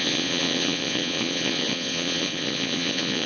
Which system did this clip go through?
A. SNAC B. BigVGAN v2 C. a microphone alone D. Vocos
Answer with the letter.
D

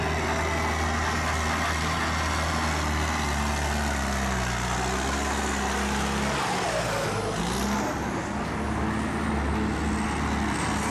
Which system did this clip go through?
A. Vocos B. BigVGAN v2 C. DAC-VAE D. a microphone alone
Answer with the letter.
D